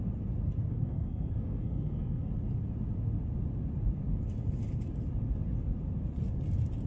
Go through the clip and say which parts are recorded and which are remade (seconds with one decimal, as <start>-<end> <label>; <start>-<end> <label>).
0.0-0.7 recorded; 0.7-2.3 remade; 2.3-6.9 recorded